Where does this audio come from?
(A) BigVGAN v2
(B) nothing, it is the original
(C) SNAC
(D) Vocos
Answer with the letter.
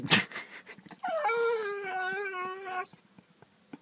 B